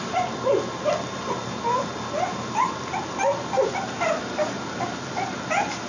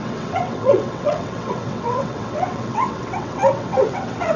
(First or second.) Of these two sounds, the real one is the first